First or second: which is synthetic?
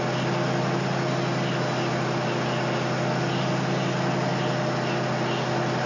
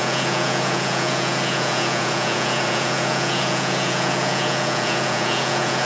second